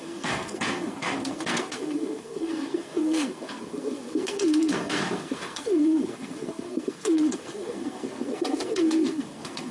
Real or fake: fake